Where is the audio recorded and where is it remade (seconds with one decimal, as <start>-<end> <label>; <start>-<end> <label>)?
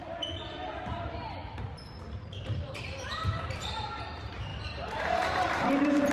0.0-0.9 recorded; 0.9-6.1 remade